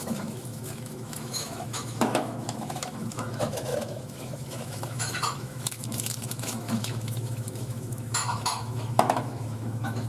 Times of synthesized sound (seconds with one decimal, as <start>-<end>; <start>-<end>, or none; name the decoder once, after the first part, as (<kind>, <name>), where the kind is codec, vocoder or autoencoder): 0.0-10.1 (autoencoder, DAC-VAE)